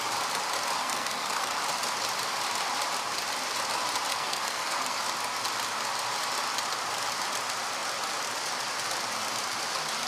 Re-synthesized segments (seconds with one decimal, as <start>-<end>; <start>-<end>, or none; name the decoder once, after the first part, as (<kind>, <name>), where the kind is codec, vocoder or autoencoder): 0.8-1.6 (codec, SNAC); 4.1-5.0